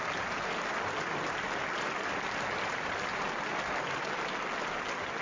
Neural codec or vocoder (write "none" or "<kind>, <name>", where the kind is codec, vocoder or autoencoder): none